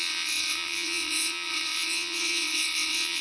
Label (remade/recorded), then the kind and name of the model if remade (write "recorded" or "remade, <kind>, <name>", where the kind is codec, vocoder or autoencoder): remade, vocoder, WaveNeXt